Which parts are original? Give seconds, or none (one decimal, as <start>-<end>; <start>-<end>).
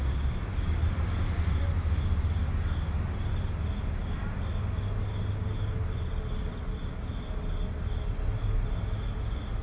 0.0-9.6